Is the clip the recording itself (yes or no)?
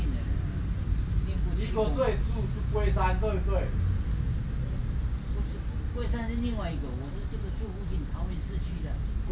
yes